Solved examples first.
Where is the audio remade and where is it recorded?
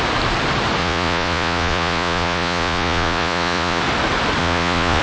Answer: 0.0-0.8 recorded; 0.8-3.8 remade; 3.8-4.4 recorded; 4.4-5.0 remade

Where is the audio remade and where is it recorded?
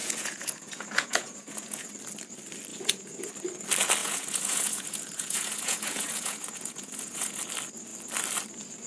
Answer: 0.0-1.9 remade; 1.9-2.7 recorded; 2.7-3.3 remade; 3.3-4.0 recorded; 4.0-7.4 remade; 7.4-8.9 recorded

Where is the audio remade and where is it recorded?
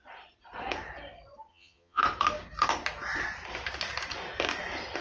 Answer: 0.0-1.5 recorded; 1.5-2.0 remade; 2.0-5.0 recorded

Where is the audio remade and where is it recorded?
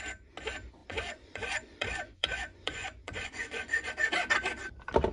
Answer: 0.0-0.8 recorded; 0.8-3.9 remade; 3.9-5.1 recorded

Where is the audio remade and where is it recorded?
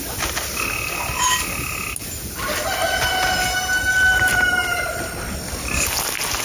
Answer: 0.0-4.3 recorded; 4.3-5.1 remade; 5.1-6.4 recorded